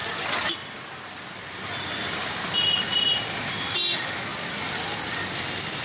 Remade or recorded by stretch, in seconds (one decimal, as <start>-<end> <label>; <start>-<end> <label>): 0.0-5.8 recorded